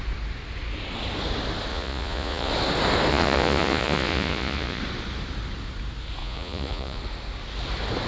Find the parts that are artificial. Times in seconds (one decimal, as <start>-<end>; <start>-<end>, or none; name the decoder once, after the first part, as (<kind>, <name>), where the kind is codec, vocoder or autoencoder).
1.7-2.5 (vocoder, Vocos); 3.1-4.8; 6.2-7.0

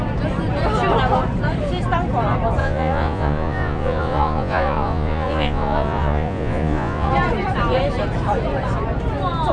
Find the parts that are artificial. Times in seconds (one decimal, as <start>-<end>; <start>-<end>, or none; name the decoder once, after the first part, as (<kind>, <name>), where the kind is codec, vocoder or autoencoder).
2.6-7.1 (vocoder, Vocos)

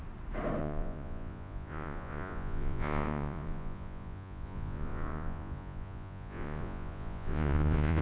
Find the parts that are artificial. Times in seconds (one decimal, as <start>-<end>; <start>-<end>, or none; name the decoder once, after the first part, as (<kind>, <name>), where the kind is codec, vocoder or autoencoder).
0.6-8.0 (vocoder, Vocos)

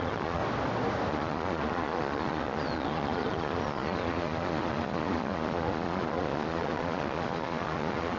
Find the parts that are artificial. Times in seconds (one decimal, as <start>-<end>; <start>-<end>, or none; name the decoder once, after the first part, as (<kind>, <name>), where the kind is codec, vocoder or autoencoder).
0.0-0.4 (vocoder, Vocos); 1.1-8.2

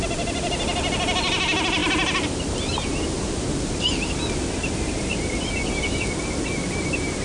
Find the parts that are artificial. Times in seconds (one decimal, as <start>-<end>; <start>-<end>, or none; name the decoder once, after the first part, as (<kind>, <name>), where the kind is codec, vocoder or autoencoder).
none

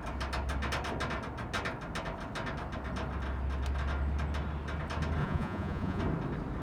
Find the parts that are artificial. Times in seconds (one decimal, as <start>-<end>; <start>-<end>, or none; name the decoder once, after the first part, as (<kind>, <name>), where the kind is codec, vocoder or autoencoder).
5.2-6.0 (vocoder, Vocos)

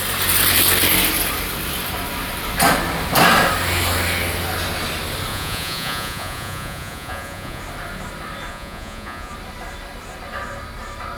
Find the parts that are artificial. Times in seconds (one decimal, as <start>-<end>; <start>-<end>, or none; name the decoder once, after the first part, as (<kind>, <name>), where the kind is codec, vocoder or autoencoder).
5.3-7.6 (vocoder, Vocos); 8.5-9.3

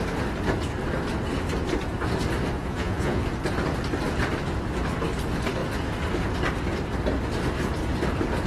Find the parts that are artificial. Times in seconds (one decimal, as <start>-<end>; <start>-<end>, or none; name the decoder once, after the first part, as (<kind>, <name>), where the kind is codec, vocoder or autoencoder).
2.6-3.2 (vocoder, Vocos)